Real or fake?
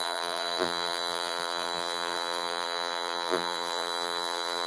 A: fake